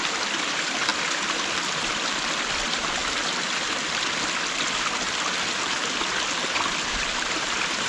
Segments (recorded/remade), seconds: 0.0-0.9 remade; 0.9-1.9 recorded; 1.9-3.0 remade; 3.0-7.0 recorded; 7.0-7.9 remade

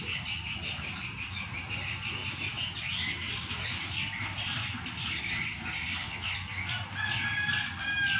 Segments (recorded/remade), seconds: 0.0-8.2 recorded

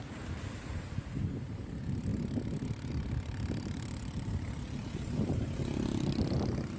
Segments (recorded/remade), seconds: 0.0-6.8 recorded